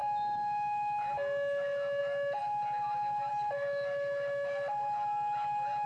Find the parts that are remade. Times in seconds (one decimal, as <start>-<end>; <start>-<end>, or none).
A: none